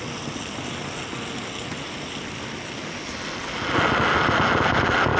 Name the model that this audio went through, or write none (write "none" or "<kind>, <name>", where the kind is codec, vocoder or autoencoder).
none